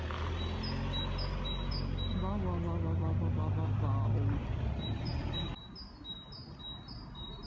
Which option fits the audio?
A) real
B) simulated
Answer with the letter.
A